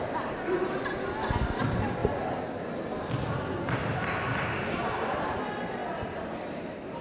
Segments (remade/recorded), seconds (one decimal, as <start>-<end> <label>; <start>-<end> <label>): 0.0-7.0 recorded